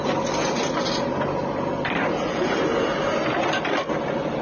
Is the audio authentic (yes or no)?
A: yes